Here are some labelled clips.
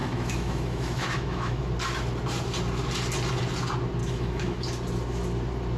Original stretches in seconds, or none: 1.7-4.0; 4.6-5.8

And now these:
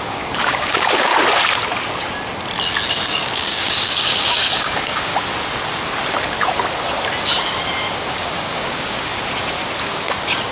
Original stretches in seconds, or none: 1.1-2.9; 5.1-8.1; 9.1-9.8

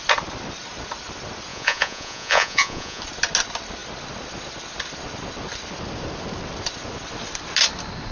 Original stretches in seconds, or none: 0.0-1.5; 3.0-8.1

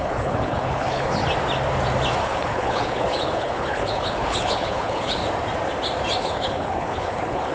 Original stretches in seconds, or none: 1.2-2.2; 5.2-6.2

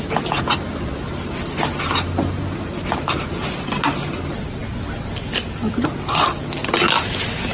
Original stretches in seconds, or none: 0.0-7.5

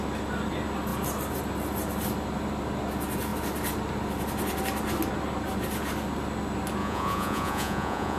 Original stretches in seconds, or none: 0.0-6.8

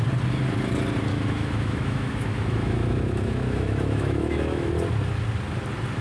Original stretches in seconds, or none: 0.0-1.1; 4.7-6.0

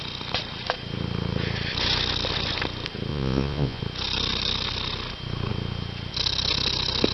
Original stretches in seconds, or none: 0.0-3.1; 3.8-7.1